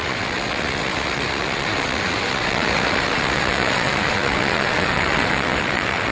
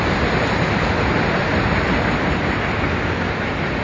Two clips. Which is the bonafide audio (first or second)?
second